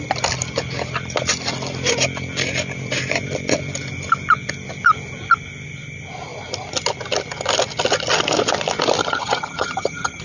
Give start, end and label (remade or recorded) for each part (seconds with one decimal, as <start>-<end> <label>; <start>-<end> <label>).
0.0-9.0 recorded; 9.0-10.2 remade